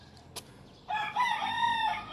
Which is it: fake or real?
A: real